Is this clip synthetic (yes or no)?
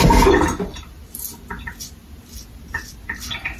no